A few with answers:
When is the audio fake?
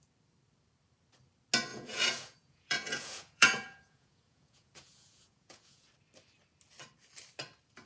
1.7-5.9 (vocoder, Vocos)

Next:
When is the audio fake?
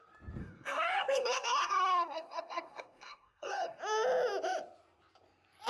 0.4-3.8 (codec, SNAC)